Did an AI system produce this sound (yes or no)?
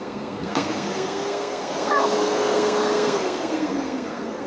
yes